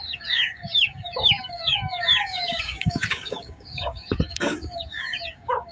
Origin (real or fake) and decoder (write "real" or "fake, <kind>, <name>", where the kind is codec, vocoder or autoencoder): fake, codec, DAC